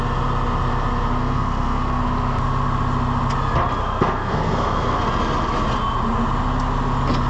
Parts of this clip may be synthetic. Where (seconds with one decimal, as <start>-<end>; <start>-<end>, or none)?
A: 1.2-2.0; 3.8-5.0